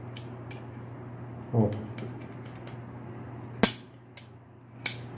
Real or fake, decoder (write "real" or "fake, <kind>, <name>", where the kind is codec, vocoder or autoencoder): real